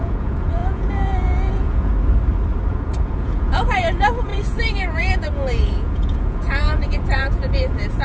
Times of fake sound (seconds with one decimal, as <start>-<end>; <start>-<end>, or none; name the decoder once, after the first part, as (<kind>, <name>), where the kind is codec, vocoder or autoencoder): 0.0-1.9 (vocoder, Vocos); 2.7-8.0